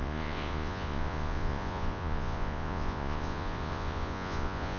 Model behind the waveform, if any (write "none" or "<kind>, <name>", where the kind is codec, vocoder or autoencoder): vocoder, Vocos